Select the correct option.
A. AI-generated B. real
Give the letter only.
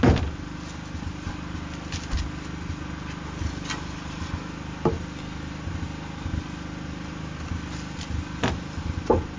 B